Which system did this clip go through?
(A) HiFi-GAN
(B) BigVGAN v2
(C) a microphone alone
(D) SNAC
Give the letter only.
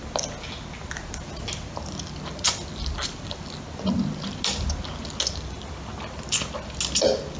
C